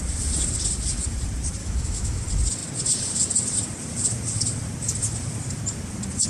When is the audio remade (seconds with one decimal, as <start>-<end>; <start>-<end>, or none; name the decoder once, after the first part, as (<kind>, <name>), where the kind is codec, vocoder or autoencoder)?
1.6-2.2 (autoencoder, DAC-VAE)